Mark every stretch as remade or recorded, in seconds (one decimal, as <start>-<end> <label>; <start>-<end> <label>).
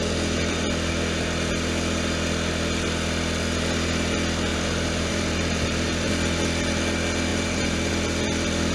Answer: 0.0-4.5 recorded; 4.5-6.1 remade; 6.1-7.3 recorded; 7.3-7.9 remade; 7.9-8.7 recorded